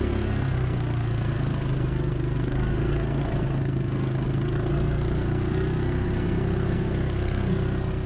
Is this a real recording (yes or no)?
no